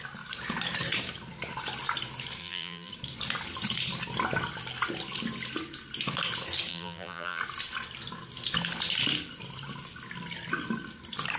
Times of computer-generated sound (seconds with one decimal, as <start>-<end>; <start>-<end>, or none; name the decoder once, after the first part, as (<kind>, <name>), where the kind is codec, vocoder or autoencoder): 2.4-2.9 (vocoder, BigVGAN v2); 6.7-7.4